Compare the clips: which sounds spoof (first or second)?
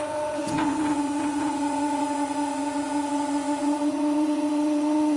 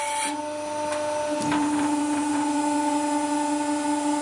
first